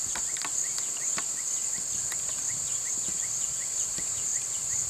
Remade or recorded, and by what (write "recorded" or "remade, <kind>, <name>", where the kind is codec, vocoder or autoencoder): recorded